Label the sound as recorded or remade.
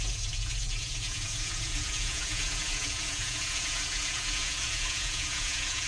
remade